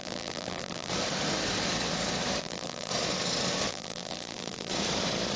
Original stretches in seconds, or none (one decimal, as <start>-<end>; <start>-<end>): 0.9-2.4; 2.9-3.7; 4.7-5.4